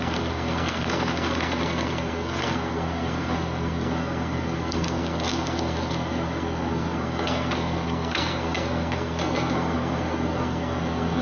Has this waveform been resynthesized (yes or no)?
yes